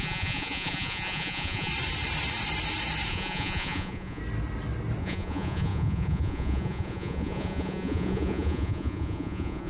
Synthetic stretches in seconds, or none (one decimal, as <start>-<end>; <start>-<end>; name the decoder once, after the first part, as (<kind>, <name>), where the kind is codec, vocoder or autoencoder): 0.0-1.7 (vocoder, Vocos); 3.1-4.2; 5.0-9.7